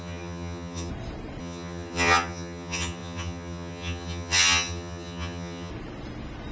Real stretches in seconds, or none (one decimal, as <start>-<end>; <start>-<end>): 0.9-1.4; 5.7-6.5